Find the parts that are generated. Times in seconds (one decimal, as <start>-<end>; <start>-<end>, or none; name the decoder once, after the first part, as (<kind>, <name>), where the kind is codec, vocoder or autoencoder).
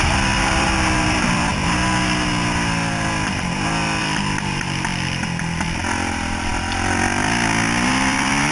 0.0-1.5 (vocoder, BigVGAN v2); 4.0-4.9; 5.9-6.5; 7.9-8.5